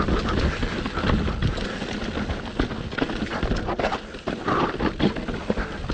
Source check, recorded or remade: recorded